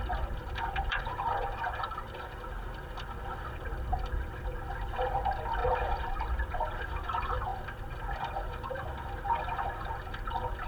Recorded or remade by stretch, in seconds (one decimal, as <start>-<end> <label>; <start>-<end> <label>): 0.0-0.4 recorded; 0.4-1.2 remade; 1.2-5.6 recorded; 5.6-6.7 remade; 6.7-10.7 recorded